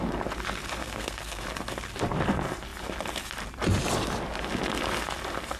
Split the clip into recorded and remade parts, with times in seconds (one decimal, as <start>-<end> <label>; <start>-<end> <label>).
0.0-0.8 recorded; 0.8-1.4 remade; 1.4-5.6 recorded